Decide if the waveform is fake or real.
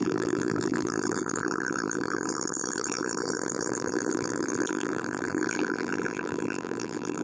fake